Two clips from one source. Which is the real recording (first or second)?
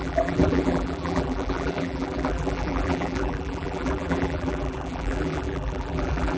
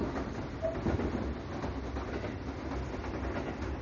second